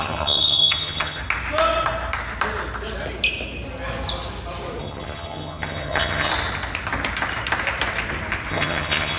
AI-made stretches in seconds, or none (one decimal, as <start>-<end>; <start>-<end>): 0.0-1.2; 4.8-6.3; 8.5-9.2